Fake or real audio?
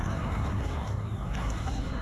fake